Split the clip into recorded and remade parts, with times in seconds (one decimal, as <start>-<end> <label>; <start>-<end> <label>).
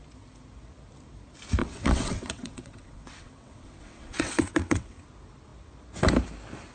0.0-1.6 recorded; 1.6-5.0 remade; 5.0-6.7 recorded